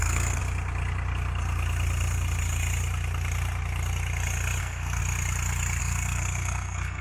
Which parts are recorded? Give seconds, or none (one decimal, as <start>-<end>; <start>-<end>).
0.4-4.6; 5.0-5.8